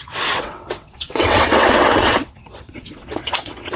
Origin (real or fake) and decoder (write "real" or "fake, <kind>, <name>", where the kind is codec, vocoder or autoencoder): fake, vocoder, WaveNeXt